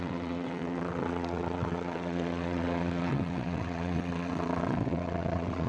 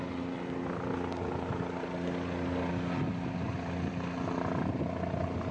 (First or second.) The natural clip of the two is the second